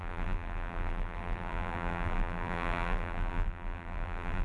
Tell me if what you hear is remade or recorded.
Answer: remade